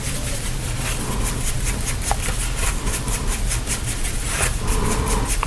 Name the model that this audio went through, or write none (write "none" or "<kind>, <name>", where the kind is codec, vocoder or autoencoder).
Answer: none